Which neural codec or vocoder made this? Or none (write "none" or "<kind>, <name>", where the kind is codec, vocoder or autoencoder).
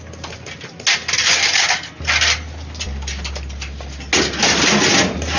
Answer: none